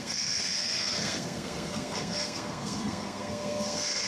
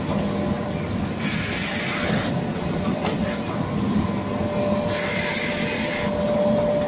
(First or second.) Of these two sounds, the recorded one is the second